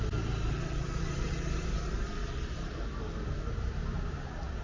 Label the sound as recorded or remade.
recorded